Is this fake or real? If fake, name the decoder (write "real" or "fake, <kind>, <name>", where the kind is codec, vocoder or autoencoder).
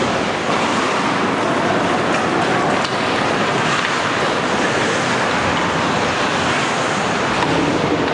real